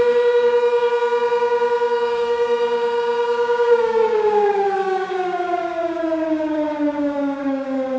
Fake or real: fake